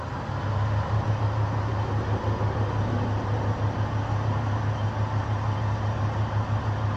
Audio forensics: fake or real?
real